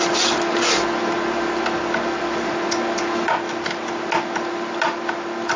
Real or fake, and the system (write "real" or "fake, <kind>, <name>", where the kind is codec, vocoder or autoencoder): real